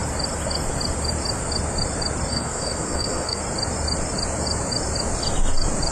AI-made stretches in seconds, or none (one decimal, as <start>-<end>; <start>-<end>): 2.3-3.4